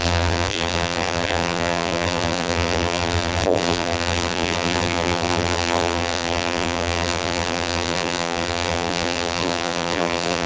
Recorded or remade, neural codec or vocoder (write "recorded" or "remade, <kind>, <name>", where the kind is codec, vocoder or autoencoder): remade, vocoder, BigVGAN v2